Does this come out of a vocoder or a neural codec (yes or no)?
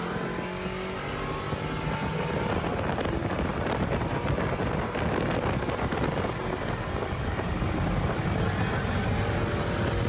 no